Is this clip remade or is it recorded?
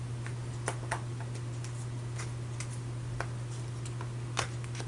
recorded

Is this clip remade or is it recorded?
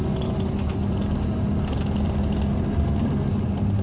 recorded